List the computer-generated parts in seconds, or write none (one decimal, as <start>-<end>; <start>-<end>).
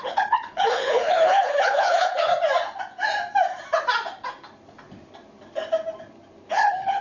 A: 0.0-2.3; 6.5-7.0